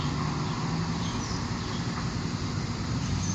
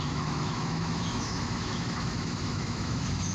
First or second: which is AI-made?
second